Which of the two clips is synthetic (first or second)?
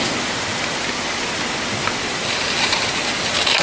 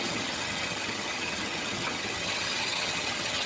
second